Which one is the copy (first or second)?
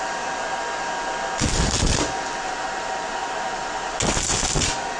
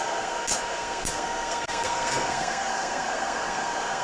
second